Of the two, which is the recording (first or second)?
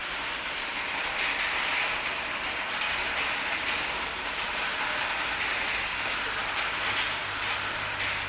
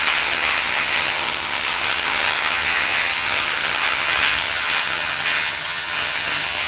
first